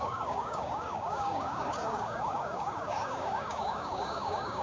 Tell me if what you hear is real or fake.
fake